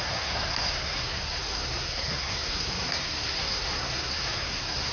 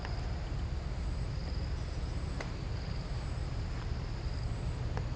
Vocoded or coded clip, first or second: first